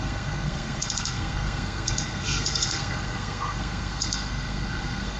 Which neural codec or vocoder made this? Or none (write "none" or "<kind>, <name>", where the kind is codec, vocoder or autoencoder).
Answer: codec, SNAC